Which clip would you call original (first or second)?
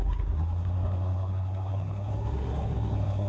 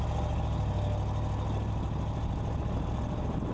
second